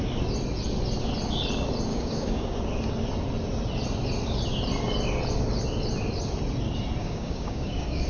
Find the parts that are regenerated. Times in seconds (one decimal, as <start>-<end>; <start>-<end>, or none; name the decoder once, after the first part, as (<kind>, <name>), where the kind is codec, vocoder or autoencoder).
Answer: 1.9-2.6 (codec, DAC); 7.0-8.1